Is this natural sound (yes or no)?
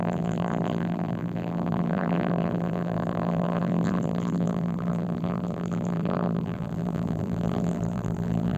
no